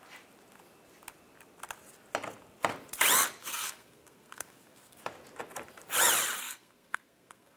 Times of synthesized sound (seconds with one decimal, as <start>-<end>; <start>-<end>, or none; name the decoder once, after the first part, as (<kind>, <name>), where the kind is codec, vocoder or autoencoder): 3.4-5.0 (codec, SNAC); 6.4-7.6